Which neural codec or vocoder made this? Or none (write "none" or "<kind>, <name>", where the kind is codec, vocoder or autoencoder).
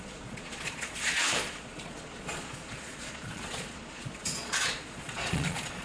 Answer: vocoder, Vocos